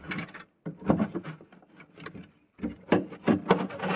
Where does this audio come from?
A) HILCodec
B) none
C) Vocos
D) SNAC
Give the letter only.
B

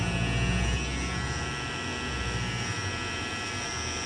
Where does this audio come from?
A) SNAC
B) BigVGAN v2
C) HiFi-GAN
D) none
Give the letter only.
D